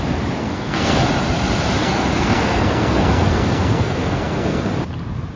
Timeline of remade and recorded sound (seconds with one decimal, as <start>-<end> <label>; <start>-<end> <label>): 0.0-0.4 recorded; 0.4-1.0 remade; 1.0-1.8 recorded; 1.8-4.7 remade; 4.7-5.4 recorded

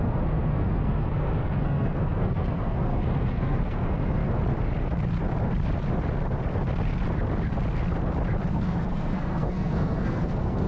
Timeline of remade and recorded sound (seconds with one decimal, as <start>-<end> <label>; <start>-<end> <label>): 0.0-4.2 remade; 4.2-8.5 recorded; 8.5-10.7 remade

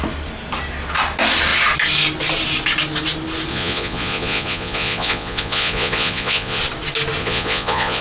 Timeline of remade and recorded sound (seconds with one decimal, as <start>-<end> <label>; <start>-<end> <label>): 0.0-3.5 recorded; 3.5-6.6 remade; 6.6-7.2 recorded; 7.2-8.0 remade

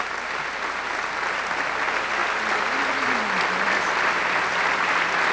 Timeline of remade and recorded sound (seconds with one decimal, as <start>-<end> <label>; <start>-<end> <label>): 0.0-5.3 recorded

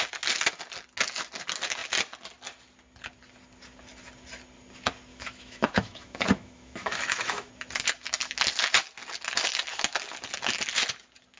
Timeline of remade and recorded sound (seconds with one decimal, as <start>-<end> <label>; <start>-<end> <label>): 0.0-5.1 recorded; 5.1-7.5 remade; 7.5-11.4 recorded

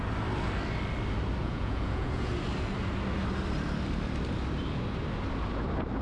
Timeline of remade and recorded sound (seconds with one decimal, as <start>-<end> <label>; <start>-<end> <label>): 0.0-1.4 recorded; 1.4-2.3 remade; 2.3-6.0 recorded